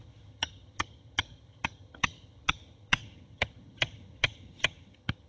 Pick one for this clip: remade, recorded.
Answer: remade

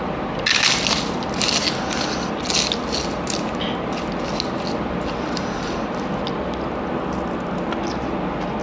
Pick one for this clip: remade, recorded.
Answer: recorded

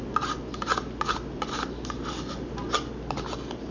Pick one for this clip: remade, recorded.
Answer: recorded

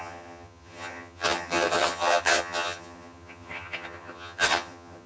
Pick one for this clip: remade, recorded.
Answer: remade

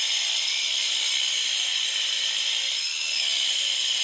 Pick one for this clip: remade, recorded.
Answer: recorded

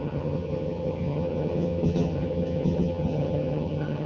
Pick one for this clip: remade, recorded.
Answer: remade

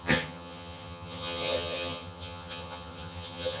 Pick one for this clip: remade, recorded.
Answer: remade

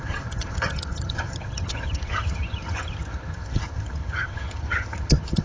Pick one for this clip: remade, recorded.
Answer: remade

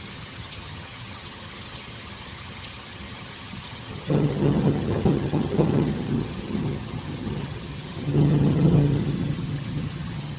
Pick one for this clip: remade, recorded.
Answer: remade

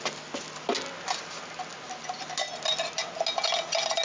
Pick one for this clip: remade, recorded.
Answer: recorded